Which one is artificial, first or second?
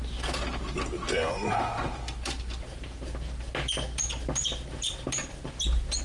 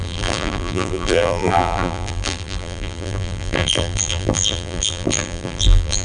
second